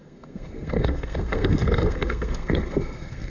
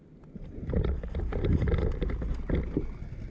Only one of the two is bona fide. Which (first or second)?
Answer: second